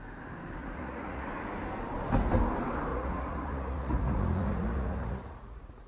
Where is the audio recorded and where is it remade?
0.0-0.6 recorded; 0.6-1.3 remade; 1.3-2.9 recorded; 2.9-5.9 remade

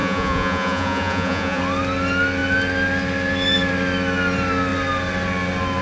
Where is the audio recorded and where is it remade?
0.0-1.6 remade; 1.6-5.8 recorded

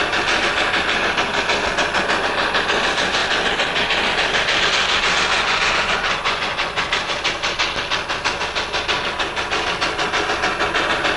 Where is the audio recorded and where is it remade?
0.0-5.3 recorded; 5.3-6.9 remade; 6.9-11.2 recorded

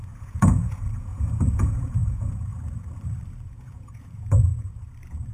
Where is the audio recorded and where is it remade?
0.0-2.5 remade; 2.5-3.4 recorded; 3.4-4.5 remade; 4.5-5.3 recorded

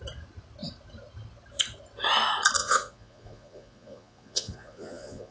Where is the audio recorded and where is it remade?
0.0-2.6 recorded; 2.6-5.3 remade

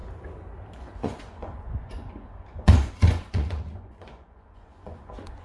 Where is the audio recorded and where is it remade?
0.0-0.8 recorded; 0.8-5.4 remade

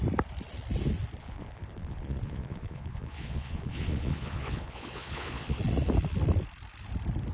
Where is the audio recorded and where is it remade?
0.0-1.2 recorded; 1.2-5.6 remade; 5.6-7.3 recorded

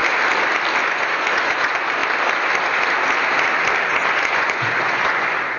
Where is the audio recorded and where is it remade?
0.0-0.8 recorded; 0.8-2.0 remade; 2.0-4.3 recorded; 4.3-5.6 remade